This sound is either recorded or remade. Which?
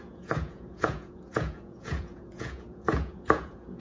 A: remade